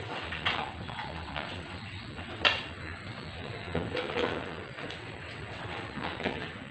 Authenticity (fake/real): fake